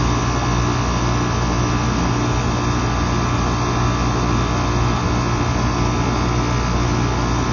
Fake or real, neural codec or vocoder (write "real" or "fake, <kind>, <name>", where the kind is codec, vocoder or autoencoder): real